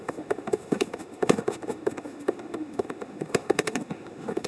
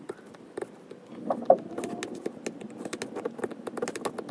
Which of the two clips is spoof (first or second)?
first